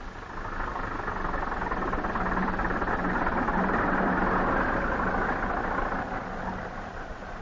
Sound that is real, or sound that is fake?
real